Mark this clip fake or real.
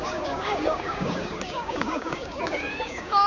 fake